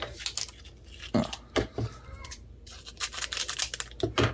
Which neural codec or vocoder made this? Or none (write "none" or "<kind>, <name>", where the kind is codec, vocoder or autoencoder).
none